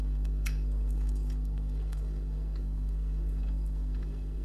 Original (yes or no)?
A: no